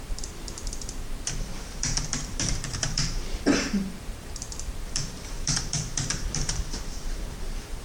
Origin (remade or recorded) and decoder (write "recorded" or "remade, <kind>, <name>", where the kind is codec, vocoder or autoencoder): remade, vocoder, BigVGAN v2